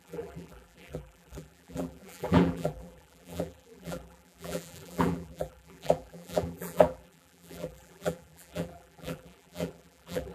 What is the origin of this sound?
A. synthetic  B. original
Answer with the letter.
A